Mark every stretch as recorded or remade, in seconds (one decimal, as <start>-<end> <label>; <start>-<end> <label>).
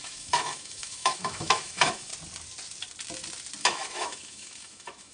0.0-2.1 remade; 2.1-3.6 recorded; 3.6-5.1 remade